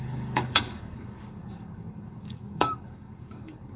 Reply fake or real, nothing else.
fake